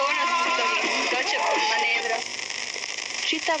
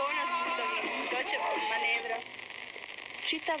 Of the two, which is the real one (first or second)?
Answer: second